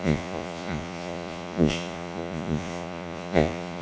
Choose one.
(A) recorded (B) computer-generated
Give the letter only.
B